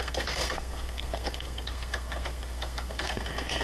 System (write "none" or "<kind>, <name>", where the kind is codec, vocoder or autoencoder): codec, SNAC